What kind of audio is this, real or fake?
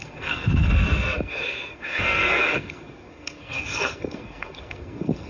fake